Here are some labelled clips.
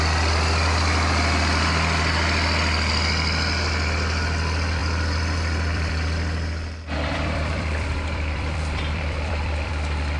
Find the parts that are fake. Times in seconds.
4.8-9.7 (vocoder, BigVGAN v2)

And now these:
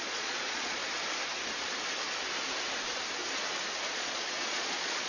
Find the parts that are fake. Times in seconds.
0.0-0.8 (vocoder, Vocos); 3.9-5.1

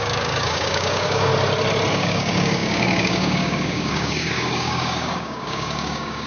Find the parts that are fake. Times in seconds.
0.0-1.3 (codec, DAC); 1.9-6.3

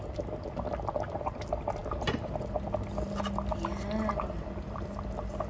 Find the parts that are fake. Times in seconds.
none

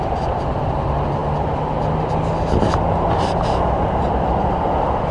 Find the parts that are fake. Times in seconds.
none

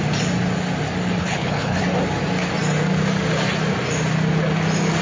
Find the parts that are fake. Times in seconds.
1.2-1.8 (codec, HILCodec)